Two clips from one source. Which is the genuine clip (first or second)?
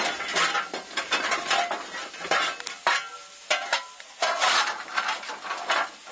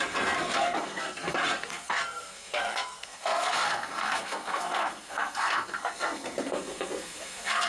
first